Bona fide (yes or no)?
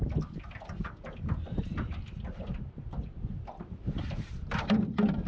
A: yes